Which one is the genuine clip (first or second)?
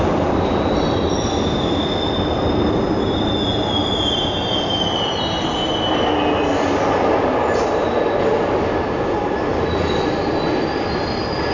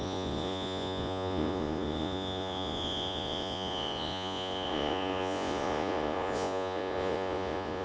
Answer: first